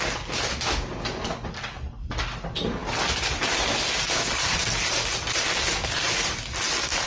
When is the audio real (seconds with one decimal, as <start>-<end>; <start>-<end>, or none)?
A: 0.0-7.1